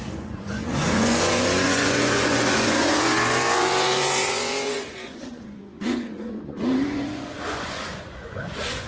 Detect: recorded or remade remade